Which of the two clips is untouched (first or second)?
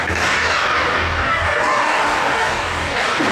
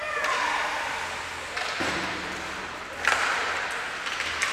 second